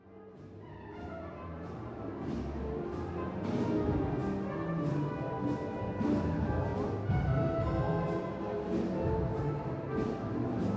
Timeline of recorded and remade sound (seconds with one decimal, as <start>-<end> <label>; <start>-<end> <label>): 0.0-4.2 remade; 4.2-4.7 recorded; 4.7-6.7 remade; 6.7-9.4 recorded; 9.4-10.8 remade